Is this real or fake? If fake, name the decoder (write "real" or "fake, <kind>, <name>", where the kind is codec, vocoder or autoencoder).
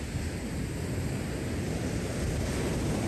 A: real